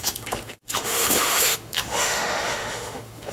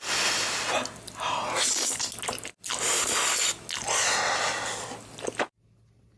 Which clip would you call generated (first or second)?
first